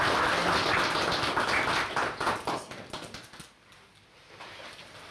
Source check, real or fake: real